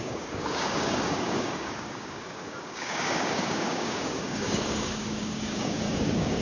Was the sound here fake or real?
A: fake